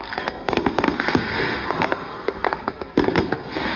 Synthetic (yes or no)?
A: yes